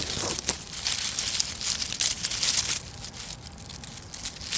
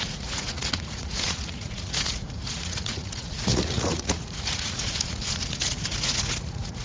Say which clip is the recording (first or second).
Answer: first